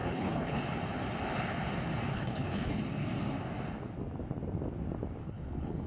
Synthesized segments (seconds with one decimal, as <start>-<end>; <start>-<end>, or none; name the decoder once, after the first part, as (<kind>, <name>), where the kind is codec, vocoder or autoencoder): 0.0-0.6 (codec, HILCodec); 2.1-2.8; 5.2-5.9